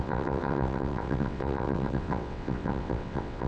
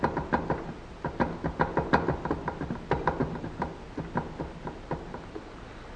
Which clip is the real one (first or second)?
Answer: second